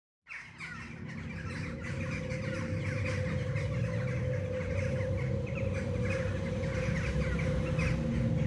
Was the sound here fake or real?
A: real